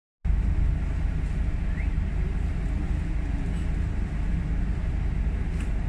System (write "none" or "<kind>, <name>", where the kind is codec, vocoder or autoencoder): none